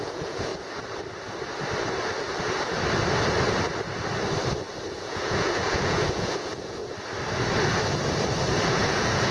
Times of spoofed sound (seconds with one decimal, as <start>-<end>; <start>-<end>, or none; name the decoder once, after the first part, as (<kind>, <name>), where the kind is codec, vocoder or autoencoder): 0.0-0.5 (vocoder, Vocos); 4.9-6.8; 8.7-9.3

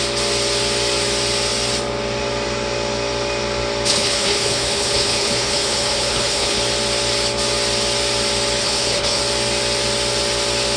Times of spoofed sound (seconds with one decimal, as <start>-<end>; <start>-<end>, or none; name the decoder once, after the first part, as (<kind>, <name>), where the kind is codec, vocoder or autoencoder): 3.9-6.6 (codec, HILCodec); 8.6-9.2

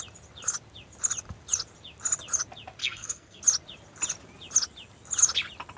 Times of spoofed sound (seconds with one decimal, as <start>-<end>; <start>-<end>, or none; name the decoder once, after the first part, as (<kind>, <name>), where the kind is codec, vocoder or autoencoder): 2.8-3.4 (codec, SNAC)

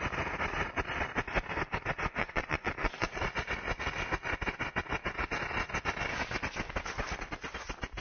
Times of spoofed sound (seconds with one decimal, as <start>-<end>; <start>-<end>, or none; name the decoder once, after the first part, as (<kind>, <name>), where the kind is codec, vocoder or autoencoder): 2.2-3.3 (vocoder, Vocos)